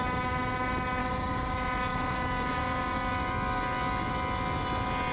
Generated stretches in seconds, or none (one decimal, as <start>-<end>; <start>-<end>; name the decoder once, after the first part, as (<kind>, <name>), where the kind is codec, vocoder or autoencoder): 1.0-1.5 (codec, DAC); 1.9-4.1